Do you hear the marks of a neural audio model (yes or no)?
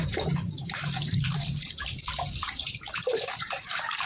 yes